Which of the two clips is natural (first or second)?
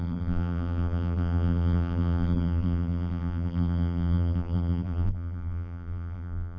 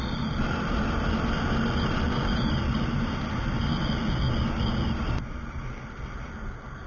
second